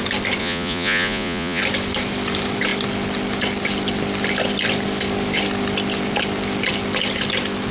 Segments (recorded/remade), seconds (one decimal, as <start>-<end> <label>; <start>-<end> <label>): 0.0-0.4 recorded; 0.4-1.6 remade; 1.6-7.7 recorded